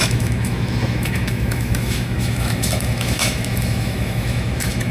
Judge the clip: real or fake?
fake